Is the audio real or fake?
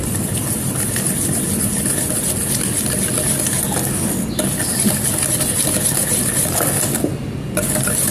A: real